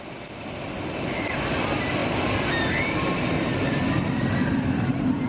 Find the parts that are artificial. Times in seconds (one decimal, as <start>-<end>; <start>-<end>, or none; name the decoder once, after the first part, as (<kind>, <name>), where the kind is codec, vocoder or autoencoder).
none